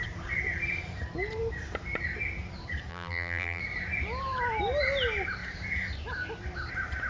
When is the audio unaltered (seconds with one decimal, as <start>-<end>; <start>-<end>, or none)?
0.0-2.9; 3.6-7.1